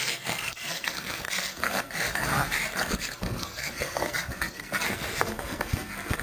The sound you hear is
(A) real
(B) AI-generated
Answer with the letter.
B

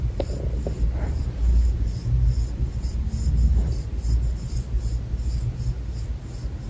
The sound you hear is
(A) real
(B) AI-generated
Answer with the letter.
A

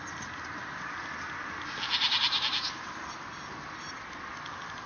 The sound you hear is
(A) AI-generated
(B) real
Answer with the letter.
B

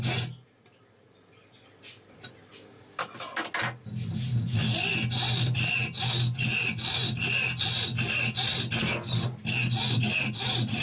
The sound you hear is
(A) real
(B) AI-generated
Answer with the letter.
A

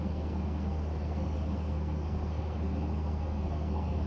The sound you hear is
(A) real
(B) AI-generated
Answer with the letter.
B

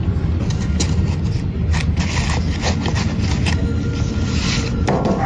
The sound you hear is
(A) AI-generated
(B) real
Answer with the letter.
B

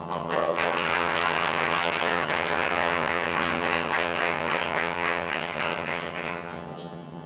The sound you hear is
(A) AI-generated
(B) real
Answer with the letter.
A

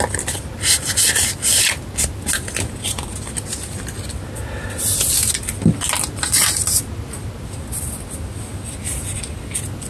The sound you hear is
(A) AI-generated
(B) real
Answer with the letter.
B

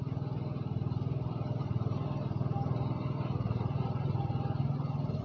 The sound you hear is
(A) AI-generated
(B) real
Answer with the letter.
B